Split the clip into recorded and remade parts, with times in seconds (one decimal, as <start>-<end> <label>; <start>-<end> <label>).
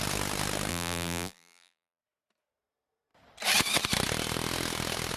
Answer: 0.0-0.7 recorded; 0.7-2.0 remade; 2.0-5.2 recorded